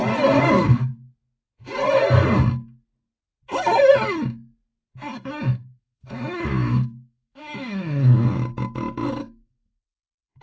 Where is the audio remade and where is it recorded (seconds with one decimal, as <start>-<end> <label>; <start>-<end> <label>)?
0.0-0.5 recorded; 0.5-0.9 remade; 0.9-5.4 recorded; 5.4-10.4 remade